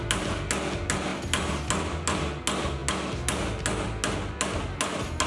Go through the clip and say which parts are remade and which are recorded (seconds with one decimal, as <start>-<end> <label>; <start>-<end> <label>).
0.0-5.3 recorded

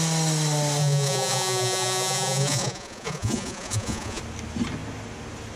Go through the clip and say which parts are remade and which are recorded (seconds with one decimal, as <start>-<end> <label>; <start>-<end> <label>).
0.0-0.8 recorded; 0.8-4.2 remade; 4.2-5.6 recorded

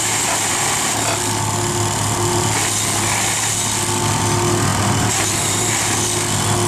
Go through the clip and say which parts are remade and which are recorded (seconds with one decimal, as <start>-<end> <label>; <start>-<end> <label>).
0.0-4.7 recorded; 4.7-5.9 remade; 5.9-6.7 recorded

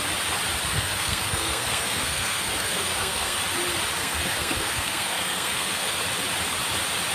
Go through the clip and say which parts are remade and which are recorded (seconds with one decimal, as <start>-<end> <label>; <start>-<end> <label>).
0.0-0.7 recorded; 0.7-3.4 remade; 3.4-4.0 recorded; 4.0-6.0 remade; 6.0-7.1 recorded

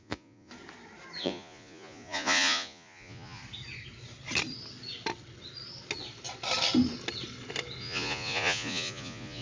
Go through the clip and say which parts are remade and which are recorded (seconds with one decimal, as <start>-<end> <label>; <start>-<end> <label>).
0.0-0.5 remade; 0.5-1.2 recorded; 1.2-3.4 remade; 3.4-7.8 recorded; 7.8-9.4 remade